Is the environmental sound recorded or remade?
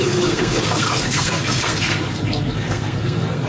remade